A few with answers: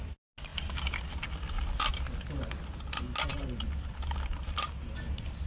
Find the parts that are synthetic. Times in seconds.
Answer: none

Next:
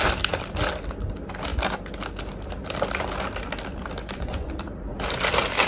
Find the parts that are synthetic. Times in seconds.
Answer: 4.0-4.5 (vocoder, Vocos)

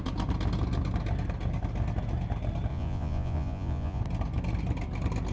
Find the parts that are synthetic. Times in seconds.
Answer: 2.7-4.0 (vocoder, Vocos)

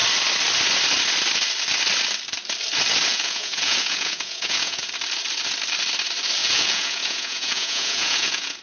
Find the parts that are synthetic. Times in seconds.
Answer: 3.1-4.9 (vocoder, Vocos); 6.4-8.6